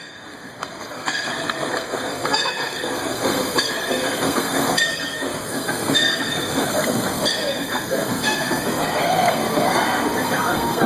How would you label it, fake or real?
fake